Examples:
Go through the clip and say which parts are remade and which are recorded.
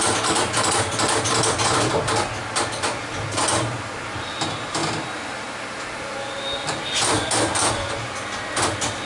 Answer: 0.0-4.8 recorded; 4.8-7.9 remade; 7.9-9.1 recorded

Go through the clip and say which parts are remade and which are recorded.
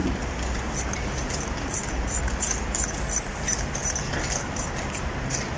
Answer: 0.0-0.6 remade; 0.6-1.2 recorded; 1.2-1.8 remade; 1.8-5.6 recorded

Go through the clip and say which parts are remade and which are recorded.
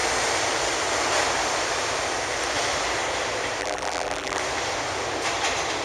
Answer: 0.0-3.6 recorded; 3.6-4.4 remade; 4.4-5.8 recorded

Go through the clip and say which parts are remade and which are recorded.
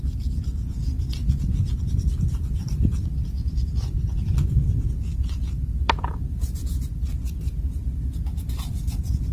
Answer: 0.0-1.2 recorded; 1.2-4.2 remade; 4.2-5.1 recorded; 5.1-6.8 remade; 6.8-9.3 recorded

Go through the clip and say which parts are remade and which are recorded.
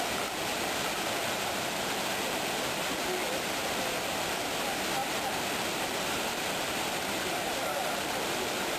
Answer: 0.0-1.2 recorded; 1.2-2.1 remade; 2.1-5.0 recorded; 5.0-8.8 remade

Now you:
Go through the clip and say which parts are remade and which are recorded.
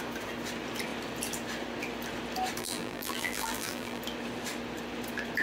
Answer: 0.0-2.6 recorded; 2.6-4.0 remade; 4.0-5.4 recorded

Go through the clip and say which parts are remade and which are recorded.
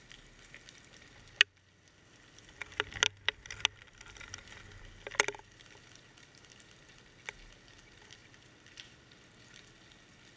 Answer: 0.0-8.2 recorded; 8.2-9.6 remade; 9.6-10.4 recorded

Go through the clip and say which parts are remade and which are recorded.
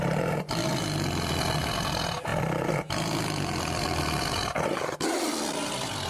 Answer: 0.0-6.1 recorded